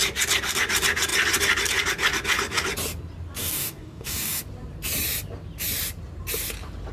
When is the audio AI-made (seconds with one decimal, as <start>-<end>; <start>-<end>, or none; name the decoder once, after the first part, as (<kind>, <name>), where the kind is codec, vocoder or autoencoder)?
3.4-4.4 (codec, DAC)